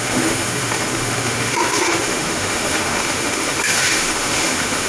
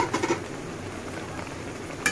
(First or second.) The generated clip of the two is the first